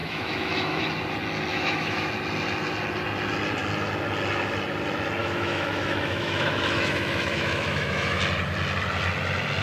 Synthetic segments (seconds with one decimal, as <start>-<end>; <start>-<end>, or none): 0.0-0.8; 1.5-2.1; 5.2-8.2

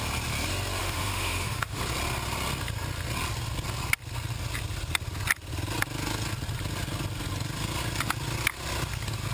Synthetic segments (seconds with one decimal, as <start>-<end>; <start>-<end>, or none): 0.8-1.8

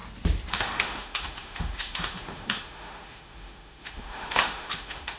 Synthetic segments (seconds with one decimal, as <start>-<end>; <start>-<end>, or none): 0.5-5.2